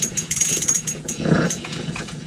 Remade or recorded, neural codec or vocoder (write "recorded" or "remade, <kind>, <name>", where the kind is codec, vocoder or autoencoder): remade, vocoder, Vocos